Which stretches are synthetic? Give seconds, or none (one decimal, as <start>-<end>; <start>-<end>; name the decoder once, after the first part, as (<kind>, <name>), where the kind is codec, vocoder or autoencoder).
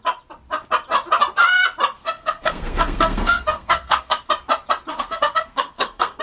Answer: 2.0-4.3 (codec, SNAC); 4.9-6.2